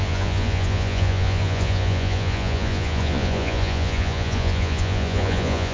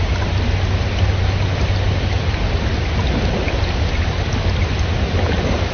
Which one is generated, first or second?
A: first